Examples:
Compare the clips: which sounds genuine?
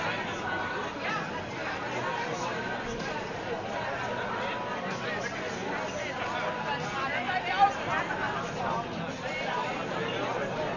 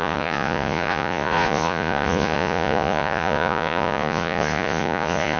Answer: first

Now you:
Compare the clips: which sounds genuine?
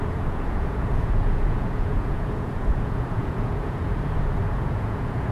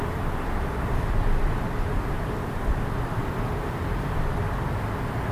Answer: second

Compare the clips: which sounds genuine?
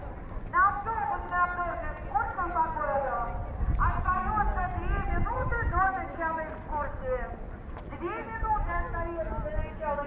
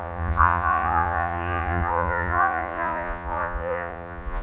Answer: first